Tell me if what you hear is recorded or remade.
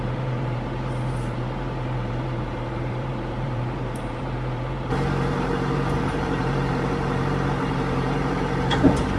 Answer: remade